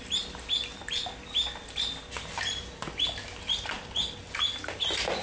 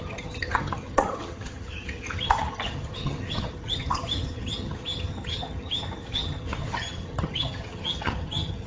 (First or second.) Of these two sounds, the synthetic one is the second